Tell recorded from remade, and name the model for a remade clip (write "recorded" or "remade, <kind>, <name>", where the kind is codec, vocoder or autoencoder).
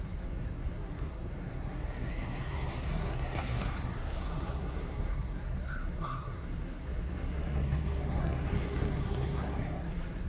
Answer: remade, codec, SNAC